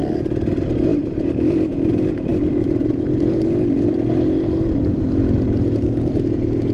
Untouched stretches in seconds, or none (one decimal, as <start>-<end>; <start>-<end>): 0.6-2.3; 5.0-6.7